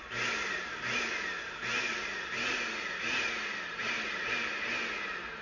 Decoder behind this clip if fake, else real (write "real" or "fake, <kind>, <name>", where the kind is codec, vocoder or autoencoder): real